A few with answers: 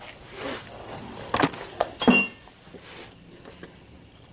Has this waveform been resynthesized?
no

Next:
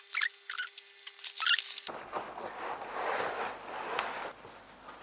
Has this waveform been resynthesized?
no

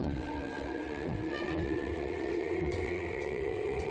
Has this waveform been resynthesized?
yes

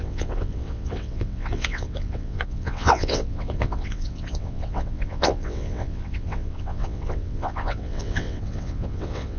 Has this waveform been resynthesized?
yes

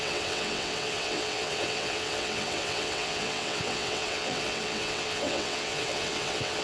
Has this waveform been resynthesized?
yes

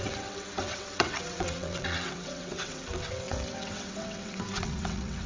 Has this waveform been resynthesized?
yes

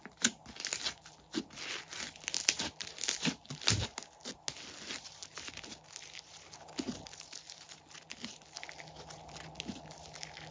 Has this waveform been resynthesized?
no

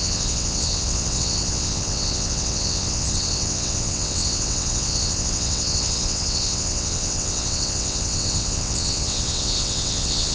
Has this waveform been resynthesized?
yes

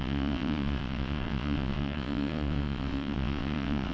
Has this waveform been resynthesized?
yes